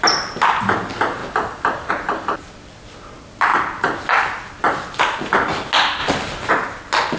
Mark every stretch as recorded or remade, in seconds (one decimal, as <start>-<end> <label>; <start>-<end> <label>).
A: 0.0-7.2 recorded